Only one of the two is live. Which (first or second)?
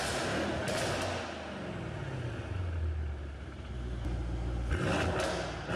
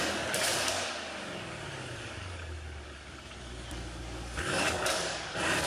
first